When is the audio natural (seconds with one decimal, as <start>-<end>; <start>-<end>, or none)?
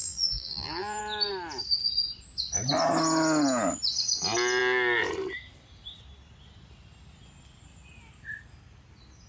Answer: 1.0-9.3